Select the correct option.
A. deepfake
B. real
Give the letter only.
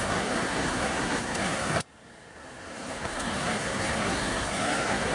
A